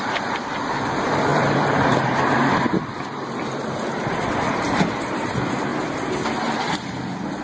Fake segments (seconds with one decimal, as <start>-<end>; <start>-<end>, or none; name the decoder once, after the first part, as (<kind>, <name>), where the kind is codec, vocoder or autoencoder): 0.0-7.4 (vocoder, BigVGAN v2)